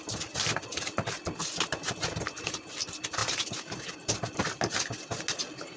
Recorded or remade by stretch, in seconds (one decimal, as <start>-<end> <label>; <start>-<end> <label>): 0.0-5.8 recorded